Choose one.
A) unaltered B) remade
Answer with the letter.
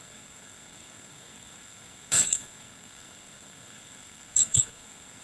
B